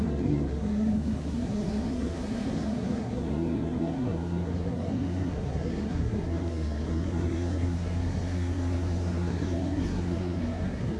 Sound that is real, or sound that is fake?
fake